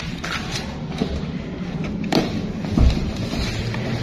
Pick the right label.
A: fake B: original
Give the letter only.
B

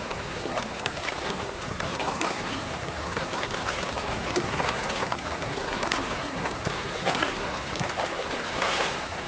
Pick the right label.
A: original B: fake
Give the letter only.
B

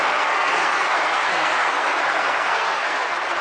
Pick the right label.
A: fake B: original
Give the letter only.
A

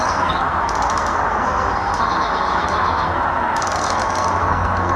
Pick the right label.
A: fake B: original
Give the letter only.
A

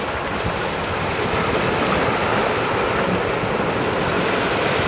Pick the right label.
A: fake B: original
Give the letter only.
B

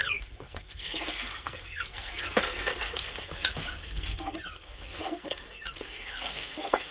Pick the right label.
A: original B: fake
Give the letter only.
B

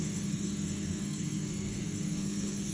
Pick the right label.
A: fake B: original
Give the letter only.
A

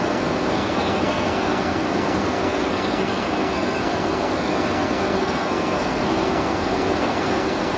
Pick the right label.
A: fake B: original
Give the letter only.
A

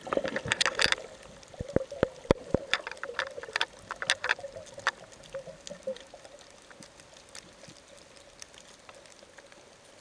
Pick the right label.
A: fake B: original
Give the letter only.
B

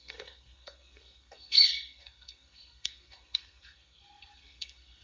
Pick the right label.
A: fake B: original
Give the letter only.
A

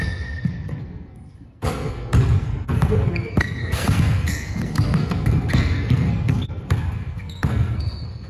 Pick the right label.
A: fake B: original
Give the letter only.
A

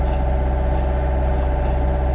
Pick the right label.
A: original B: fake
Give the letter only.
A